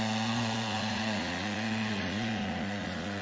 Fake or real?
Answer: fake